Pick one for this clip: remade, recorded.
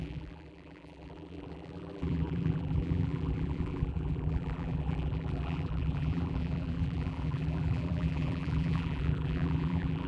remade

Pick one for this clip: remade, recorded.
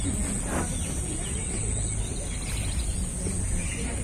recorded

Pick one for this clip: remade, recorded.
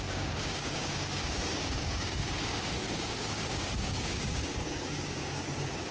remade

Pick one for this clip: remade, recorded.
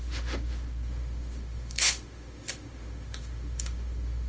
remade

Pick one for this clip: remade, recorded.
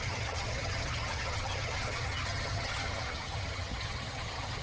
remade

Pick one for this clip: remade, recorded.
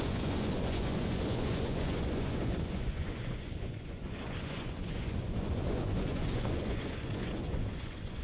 remade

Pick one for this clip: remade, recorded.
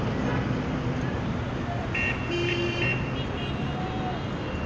recorded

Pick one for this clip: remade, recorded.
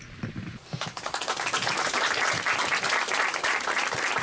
recorded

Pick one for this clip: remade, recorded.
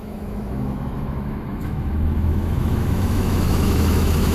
remade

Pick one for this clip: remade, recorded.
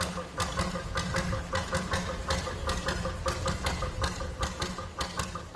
recorded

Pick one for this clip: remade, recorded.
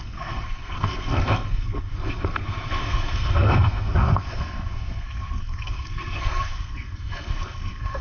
remade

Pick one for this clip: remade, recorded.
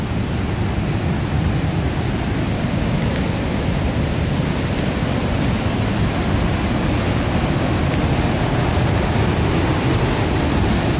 recorded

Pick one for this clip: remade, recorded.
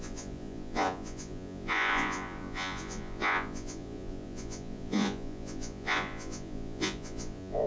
remade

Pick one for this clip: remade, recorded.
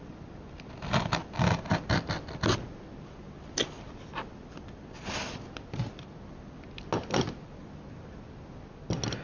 recorded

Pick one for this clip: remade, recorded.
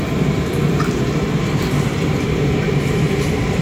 remade